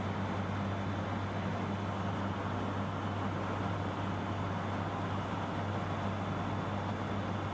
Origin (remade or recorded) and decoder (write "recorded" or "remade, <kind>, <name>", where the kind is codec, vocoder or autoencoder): recorded